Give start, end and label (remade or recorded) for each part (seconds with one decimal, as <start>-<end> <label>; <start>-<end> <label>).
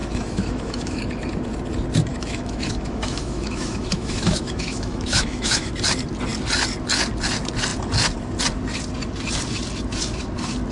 0.0-1.0 remade; 1.0-2.1 recorded; 2.1-5.7 remade; 5.7-10.7 recorded